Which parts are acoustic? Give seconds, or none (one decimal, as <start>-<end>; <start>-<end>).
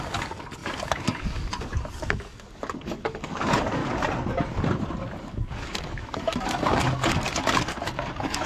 3.8-5.2